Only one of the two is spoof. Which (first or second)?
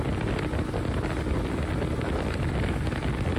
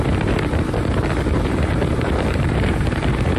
second